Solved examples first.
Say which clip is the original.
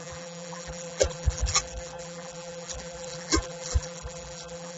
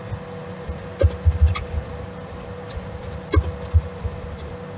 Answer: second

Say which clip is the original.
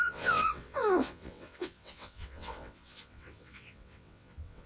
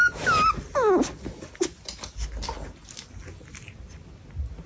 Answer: second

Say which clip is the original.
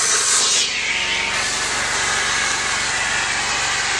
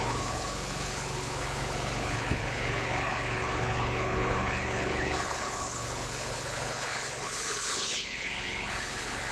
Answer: first